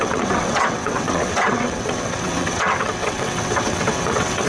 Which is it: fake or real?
fake